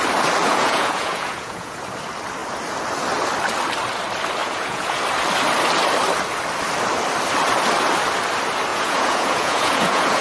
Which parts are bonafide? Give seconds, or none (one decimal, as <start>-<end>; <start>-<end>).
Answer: 0.0-0.4; 1.8-4.4; 5.0-8.7